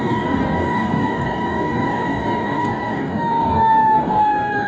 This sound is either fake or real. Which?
fake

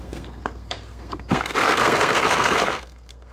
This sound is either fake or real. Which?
fake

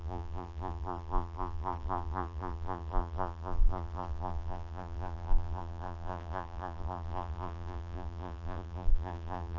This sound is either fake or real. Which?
fake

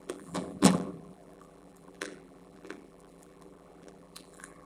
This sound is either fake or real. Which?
fake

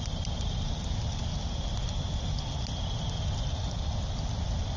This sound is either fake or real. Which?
real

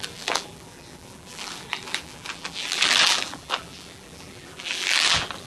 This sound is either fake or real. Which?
fake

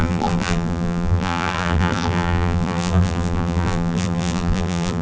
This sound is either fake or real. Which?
fake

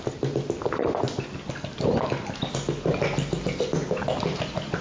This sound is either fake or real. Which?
real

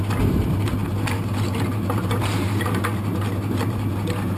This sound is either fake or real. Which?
real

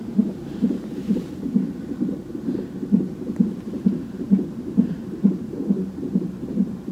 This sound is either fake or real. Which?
fake